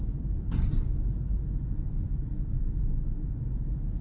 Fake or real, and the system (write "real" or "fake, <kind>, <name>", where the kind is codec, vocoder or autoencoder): real